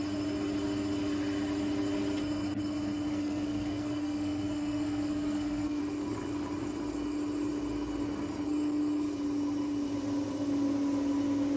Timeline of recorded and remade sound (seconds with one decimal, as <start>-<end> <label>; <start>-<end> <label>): 0.0-3.1 recorded; 3.1-5.8 remade; 5.8-11.6 recorded